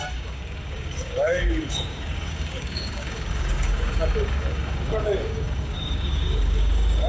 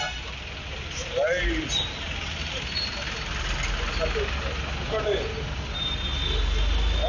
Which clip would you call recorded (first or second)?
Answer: second